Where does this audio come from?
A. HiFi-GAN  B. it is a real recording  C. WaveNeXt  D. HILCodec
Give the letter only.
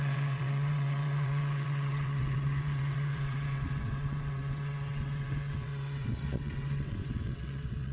C